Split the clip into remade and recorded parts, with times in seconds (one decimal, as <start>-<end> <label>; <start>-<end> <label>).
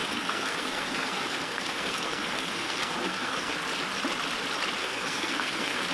0.0-3.5 remade; 3.5-4.8 recorded; 4.8-5.9 remade